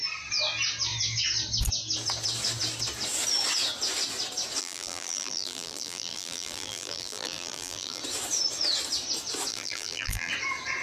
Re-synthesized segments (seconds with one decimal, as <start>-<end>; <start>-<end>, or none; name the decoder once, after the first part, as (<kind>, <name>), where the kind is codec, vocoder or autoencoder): 4.6-8.0 (vocoder, BigVGAN v2); 9.5-10.3

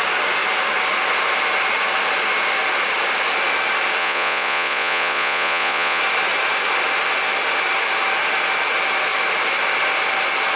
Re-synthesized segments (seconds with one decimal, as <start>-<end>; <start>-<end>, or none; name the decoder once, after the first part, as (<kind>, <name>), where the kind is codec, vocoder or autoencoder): 4.0-6.0 (vocoder, Vocos)

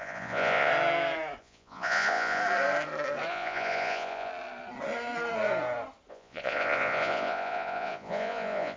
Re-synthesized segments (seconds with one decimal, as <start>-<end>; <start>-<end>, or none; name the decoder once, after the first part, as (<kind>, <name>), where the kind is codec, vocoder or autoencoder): 0.0-0.7 (vocoder, Vocos); 1.4-2.4; 3.3-4.3; 6.1-8.8

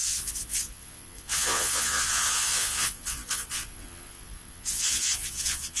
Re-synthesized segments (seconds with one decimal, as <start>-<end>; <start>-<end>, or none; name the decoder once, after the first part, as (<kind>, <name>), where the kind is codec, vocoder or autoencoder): 0.0-5.8 (vocoder, Vocos)

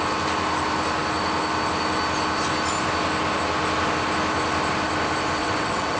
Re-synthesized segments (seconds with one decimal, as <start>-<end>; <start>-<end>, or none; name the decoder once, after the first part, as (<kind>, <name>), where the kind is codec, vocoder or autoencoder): 5.4-6.0 (vocoder, WaveNeXt)

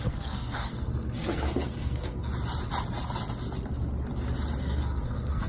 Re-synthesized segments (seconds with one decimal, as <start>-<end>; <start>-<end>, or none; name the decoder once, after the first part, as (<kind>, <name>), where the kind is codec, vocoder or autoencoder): 0.0-2.3 (codec, SNAC); 4.6-5.5

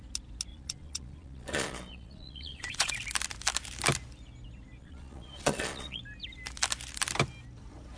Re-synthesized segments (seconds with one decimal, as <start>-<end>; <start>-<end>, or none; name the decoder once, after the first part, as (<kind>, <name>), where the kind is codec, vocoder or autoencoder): 0.5-2.9 (vocoder, Vocos); 4.8-6.0

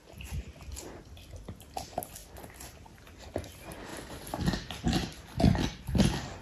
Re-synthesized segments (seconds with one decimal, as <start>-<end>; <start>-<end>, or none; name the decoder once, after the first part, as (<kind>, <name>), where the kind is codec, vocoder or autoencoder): none